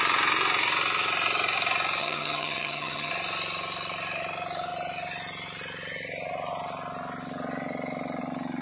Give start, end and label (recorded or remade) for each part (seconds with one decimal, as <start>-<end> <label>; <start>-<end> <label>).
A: 0.0-2.0 recorded; 2.0-3.1 remade; 3.1-8.6 recorded